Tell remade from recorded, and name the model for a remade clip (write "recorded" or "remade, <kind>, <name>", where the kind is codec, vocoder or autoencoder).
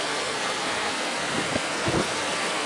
remade, codec, SNAC